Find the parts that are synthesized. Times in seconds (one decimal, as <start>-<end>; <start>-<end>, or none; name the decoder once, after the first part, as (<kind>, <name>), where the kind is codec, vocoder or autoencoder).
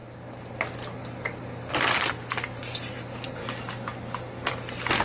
3.4-4.5 (codec, DAC)